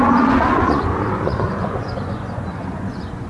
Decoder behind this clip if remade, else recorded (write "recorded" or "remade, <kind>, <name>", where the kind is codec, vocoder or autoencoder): remade, vocoder, Vocos